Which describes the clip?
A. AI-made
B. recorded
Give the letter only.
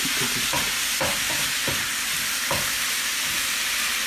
B